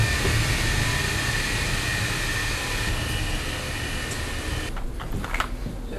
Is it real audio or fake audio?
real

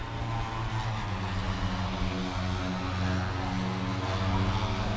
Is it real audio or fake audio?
real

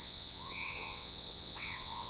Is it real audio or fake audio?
fake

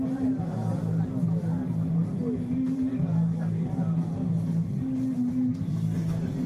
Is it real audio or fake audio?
real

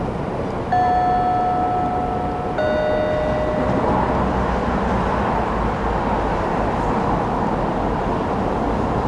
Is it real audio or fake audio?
real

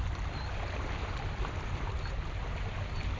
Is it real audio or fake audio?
real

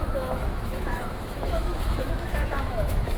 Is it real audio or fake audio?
fake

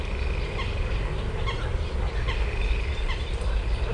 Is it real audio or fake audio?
real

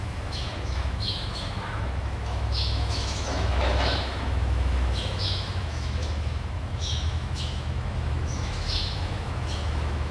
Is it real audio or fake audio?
fake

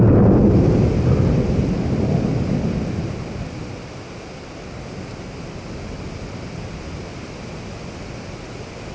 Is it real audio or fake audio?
real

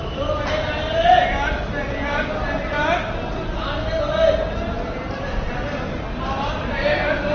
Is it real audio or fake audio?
real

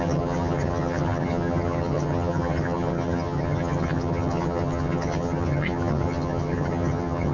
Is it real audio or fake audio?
fake